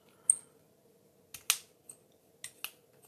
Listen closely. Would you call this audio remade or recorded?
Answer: recorded